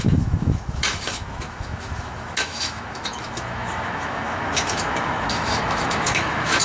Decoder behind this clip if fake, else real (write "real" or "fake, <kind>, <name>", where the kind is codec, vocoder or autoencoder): fake, autoencoder, DAC-VAE